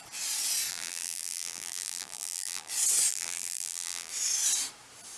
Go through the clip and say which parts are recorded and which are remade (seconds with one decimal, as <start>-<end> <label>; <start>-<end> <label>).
0.0-0.7 recorded; 0.7-2.7 remade; 2.7-3.1 recorded; 3.1-4.1 remade; 4.1-5.2 recorded